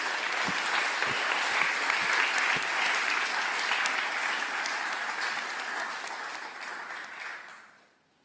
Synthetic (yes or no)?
no